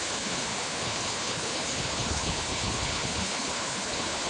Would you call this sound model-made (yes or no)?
yes